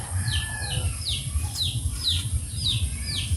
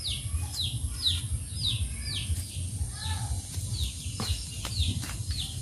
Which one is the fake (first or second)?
first